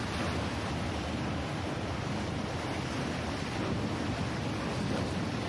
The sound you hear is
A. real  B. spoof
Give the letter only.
A